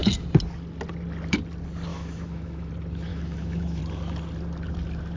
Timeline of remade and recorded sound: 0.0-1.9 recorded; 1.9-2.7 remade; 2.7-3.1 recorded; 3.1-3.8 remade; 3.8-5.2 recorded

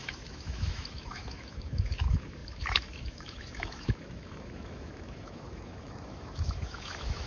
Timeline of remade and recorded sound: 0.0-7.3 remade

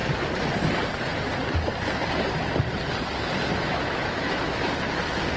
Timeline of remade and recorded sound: 0.0-3.5 recorded; 3.5-4.7 remade; 4.7-5.4 recorded

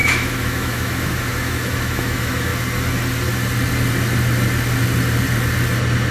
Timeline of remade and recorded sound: 0.0-2.5 remade; 2.5-6.1 recorded

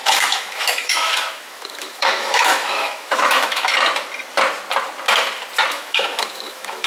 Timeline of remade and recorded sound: 0.0-3.7 remade; 3.7-5.7 recorded; 5.7-6.9 remade

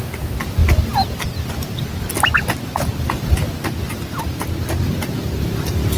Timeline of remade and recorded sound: 0.0-6.0 recorded

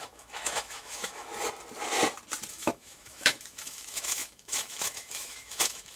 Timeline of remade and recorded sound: 0.0-1.3 remade; 1.3-2.5 recorded; 2.5-6.0 remade